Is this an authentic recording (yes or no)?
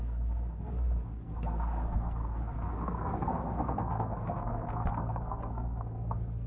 no